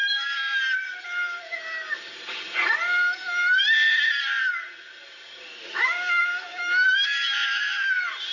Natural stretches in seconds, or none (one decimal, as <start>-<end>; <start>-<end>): 0.6-5.5; 7.9-8.3